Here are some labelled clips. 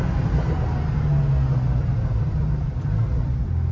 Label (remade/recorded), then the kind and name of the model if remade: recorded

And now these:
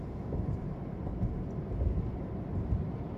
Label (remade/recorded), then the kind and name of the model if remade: recorded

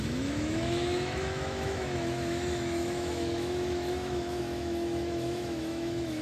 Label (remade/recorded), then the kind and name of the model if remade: remade, autoencoder, DAC-VAE